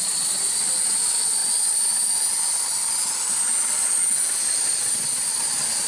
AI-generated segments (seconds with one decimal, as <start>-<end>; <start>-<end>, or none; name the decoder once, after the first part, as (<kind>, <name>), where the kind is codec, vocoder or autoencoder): none